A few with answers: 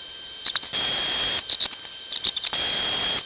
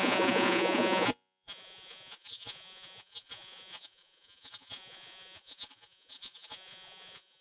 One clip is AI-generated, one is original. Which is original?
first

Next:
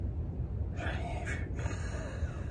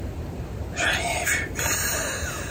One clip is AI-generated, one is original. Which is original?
first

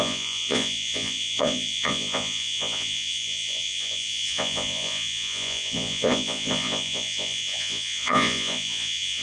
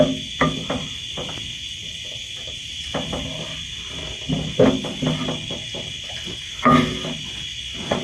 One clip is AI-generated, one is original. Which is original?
second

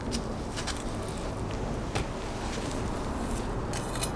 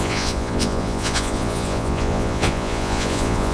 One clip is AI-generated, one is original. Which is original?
first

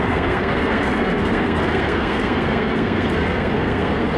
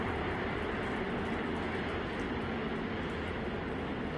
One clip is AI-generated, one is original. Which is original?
second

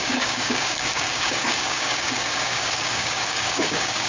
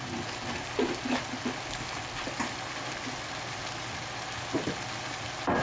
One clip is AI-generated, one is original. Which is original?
second